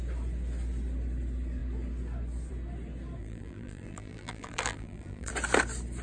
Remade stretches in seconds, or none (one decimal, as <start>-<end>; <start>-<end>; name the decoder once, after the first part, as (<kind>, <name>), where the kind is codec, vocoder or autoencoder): 3.2-5.3 (vocoder, BigVGAN v2)